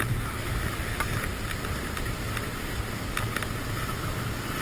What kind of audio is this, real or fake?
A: real